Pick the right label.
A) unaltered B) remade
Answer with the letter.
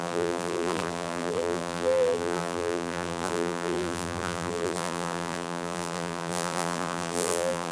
B